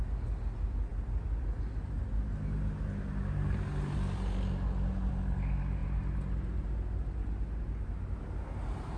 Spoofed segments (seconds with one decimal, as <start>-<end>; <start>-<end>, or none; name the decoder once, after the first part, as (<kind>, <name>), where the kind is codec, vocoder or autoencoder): none